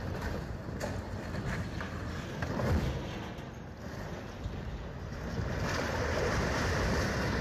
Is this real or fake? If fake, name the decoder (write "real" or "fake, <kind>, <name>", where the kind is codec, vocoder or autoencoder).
real